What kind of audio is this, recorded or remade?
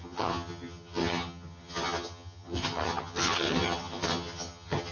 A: remade